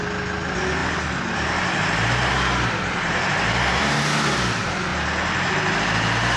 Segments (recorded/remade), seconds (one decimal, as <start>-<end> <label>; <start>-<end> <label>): 0.0-6.4 recorded